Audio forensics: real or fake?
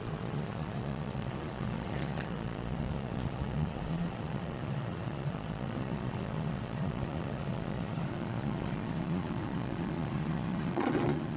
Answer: fake